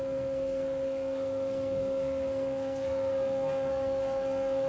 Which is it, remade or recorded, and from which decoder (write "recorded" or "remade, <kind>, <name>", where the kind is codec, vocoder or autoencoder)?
remade, codec, SNAC